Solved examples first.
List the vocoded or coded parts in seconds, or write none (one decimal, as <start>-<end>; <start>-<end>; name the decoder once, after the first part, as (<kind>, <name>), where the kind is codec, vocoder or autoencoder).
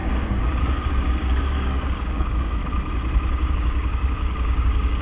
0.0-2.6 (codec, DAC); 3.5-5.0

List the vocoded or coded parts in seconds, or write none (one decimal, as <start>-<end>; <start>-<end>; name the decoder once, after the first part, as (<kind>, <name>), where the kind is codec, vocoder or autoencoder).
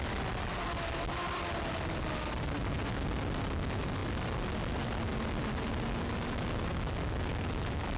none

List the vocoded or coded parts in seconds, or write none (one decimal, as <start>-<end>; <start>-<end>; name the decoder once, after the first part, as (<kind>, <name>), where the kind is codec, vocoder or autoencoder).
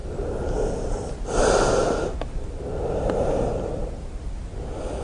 none